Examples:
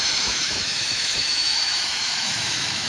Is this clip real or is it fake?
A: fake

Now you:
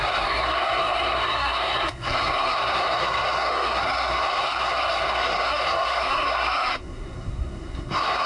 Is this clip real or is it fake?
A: fake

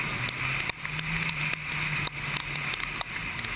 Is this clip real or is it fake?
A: real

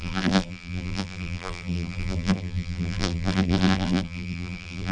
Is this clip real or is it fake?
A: fake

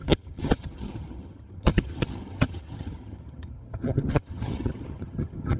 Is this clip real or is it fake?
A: fake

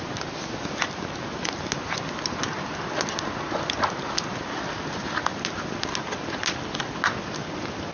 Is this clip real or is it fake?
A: real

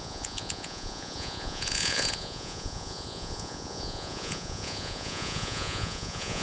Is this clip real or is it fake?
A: fake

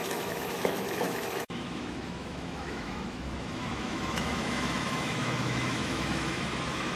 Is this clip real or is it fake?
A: fake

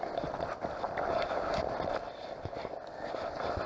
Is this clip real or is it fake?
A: real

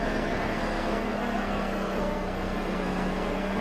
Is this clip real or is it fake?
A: fake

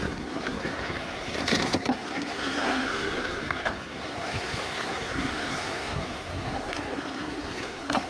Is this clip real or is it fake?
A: fake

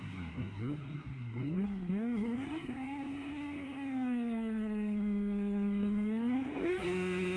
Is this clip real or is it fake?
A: fake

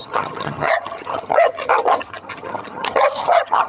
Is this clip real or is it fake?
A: fake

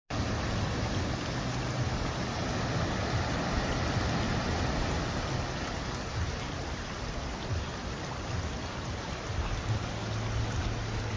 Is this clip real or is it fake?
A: real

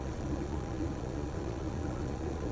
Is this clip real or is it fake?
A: fake